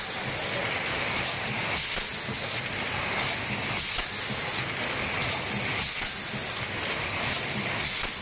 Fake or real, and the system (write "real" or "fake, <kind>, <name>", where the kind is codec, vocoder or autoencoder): real